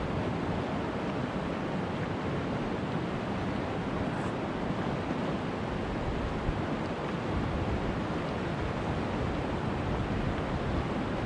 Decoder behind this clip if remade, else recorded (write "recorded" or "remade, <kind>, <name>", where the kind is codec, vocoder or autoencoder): recorded